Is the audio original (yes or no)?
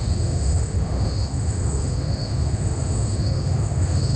no